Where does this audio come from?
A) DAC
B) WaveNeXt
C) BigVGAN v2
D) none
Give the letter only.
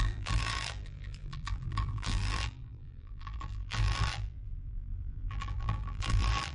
C